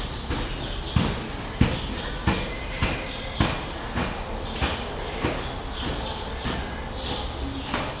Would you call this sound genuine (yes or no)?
yes